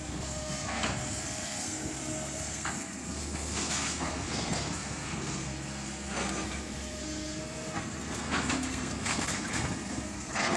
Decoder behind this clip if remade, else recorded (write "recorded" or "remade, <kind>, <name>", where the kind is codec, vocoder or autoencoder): remade, codec, SNAC